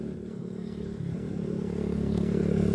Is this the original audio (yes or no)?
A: no